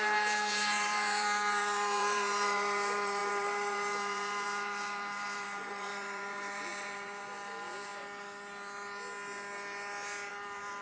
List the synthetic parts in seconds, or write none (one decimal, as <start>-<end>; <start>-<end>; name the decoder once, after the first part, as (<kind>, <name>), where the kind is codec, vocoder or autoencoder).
0.0-7.9 (vocoder, BigVGAN v2); 10.3-10.8